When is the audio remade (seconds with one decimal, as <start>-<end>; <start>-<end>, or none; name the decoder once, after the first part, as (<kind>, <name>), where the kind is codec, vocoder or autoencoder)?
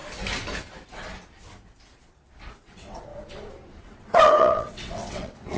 2.6-3.1 (vocoder, WaveNeXt); 3.8-5.6